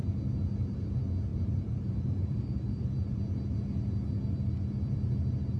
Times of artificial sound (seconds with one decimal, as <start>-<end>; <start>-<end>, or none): 1.3-3.2